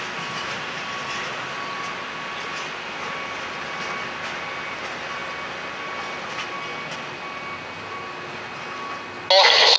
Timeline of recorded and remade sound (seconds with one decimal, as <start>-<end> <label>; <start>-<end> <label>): 0.0-9.8 recorded